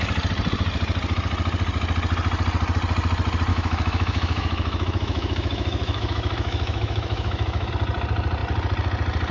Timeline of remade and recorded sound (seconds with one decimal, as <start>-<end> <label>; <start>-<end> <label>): 0.0-3.5 recorded; 3.5-7.7 remade; 7.7-9.3 recorded